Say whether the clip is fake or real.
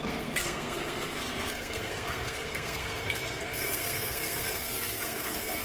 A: fake